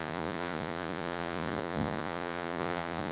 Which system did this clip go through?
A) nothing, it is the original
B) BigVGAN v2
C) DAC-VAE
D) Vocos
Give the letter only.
D